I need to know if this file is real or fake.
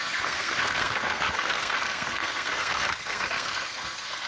fake